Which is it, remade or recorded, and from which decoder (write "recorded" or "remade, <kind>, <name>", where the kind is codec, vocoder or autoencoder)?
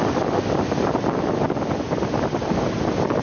recorded